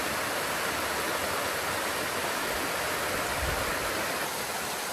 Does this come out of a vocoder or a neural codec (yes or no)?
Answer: no